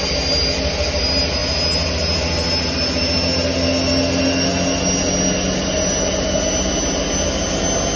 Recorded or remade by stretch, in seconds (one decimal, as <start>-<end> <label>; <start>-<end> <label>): 0.0-8.0 recorded